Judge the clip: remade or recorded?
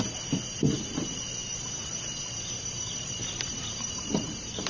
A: remade